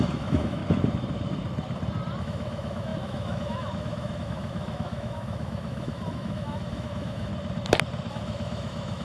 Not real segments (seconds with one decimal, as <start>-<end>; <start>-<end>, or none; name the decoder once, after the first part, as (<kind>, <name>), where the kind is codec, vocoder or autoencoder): 0.0-0.6 (autoencoder, DAC-VAE); 2.2-7.3; 8.1-9.0